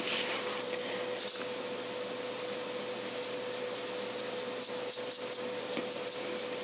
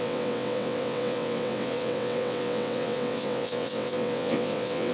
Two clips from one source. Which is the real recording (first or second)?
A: first